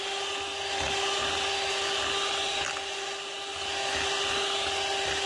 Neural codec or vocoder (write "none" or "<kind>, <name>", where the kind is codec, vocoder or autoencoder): none